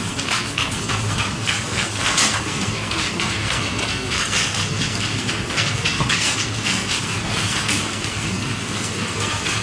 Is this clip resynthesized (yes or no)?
yes